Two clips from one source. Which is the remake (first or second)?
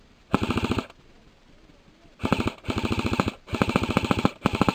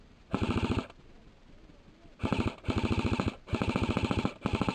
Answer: first